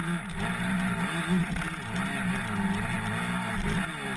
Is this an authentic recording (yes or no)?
yes